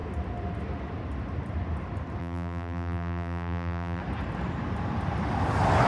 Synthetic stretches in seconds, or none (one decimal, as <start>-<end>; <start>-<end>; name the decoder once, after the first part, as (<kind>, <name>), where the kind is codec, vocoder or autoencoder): 2.2-4.0 (vocoder, BigVGAN v2)